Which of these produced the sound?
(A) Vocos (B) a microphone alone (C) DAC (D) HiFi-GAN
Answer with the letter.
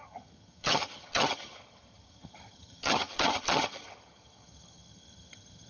D